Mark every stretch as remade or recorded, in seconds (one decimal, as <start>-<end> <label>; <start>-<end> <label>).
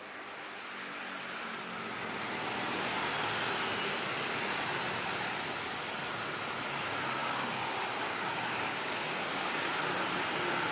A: 0.0-7.2 recorded; 7.2-9.8 remade; 9.8-10.7 recorded